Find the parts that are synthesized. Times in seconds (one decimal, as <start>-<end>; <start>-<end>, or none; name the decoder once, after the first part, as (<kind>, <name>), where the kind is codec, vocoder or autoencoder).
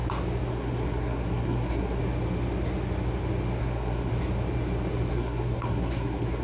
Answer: 0.5-2.0 (codec, SNAC); 3.6-4.1; 5.1-6.4